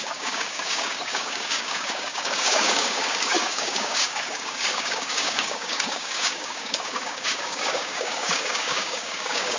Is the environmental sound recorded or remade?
remade